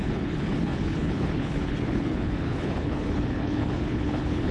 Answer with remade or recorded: remade